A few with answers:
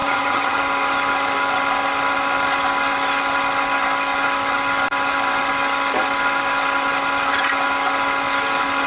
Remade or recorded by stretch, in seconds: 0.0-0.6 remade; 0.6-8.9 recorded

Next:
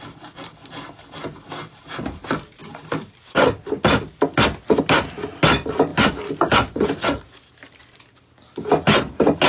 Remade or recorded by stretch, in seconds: 0.0-9.5 recorded

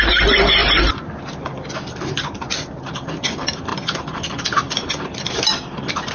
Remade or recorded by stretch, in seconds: 0.0-6.1 recorded